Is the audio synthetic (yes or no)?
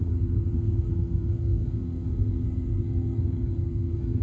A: yes